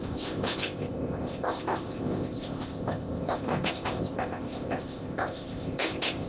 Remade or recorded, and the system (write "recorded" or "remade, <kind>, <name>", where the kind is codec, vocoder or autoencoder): remade, codec, ZipCodec